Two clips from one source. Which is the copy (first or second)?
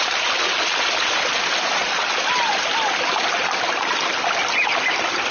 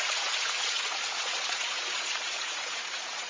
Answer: second